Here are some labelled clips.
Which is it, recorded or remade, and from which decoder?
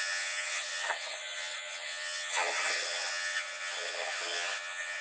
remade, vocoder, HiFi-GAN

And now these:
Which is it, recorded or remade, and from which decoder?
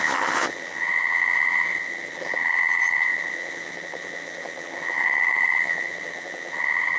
remade, vocoder, HiFi-GAN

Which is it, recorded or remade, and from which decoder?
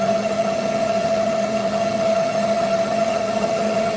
remade, vocoder, HiFi-GAN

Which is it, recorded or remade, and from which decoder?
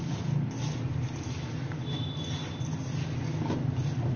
recorded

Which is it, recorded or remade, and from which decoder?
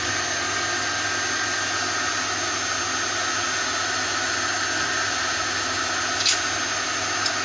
recorded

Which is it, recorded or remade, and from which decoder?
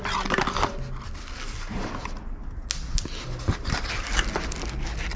recorded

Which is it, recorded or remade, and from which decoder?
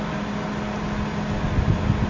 recorded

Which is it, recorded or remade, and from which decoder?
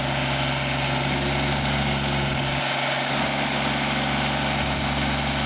recorded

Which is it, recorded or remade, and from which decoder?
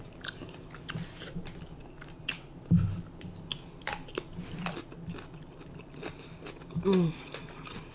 recorded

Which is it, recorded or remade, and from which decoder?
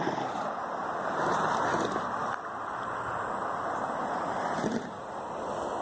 recorded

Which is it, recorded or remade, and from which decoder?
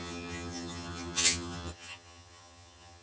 remade, vocoder, HiFi-GAN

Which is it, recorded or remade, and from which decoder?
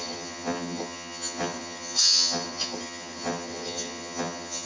remade, vocoder, HiFi-GAN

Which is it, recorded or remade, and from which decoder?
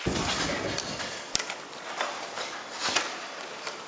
recorded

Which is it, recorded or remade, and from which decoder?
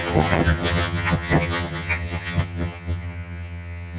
remade, vocoder, HiFi-GAN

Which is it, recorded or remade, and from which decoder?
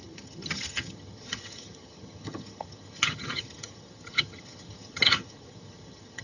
remade, vocoder, HiFi-GAN